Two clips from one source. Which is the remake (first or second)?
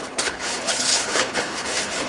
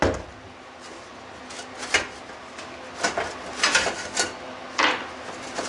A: first